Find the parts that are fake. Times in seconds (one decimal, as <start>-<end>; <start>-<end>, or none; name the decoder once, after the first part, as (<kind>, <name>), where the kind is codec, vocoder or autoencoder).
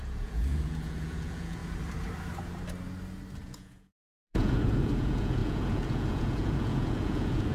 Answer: 0.0-1.6 (vocoder, Vocos); 3.4-7.5